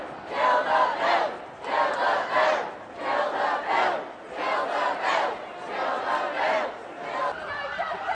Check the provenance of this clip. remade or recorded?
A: recorded